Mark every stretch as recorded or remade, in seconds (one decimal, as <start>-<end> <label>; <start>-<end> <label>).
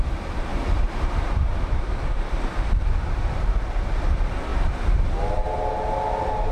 0.0-0.5 recorded; 0.5-3.4 remade; 3.4-4.5 recorded; 4.5-5.0 remade; 5.0-6.5 recorded